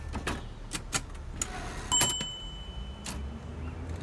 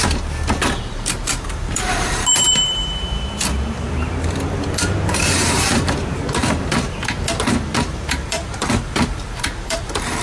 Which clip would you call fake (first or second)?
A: second